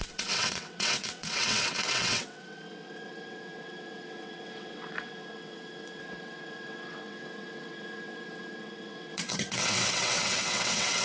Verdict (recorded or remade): remade